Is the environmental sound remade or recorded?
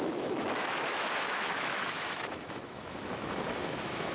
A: remade